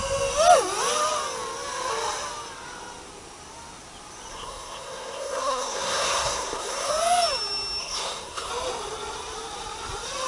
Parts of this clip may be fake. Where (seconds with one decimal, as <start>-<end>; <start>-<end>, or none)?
4.3-6.9; 7.8-8.5